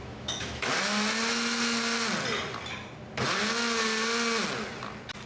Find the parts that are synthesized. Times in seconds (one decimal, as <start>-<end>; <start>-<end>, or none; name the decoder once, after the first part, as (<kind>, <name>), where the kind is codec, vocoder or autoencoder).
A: 0.0-0.7 (autoencoder, DAC-VAE)